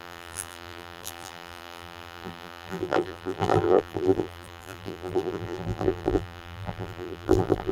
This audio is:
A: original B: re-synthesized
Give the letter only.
B